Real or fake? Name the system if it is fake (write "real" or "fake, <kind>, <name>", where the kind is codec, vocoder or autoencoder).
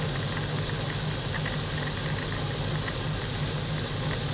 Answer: real